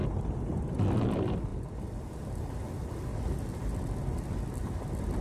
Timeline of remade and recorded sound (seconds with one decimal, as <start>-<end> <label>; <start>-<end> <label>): 0.0-5.2 recorded

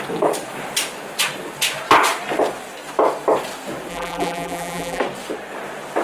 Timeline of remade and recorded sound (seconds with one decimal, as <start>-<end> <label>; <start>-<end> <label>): 0.0-3.9 recorded; 3.9-5.0 remade; 5.0-6.0 recorded

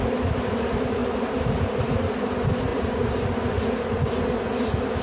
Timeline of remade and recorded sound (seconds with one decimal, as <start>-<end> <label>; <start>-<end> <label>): 0.0-1.0 recorded; 1.0-2.1 remade; 2.1-2.7 recorded; 2.7-3.4 remade; 3.4-5.0 recorded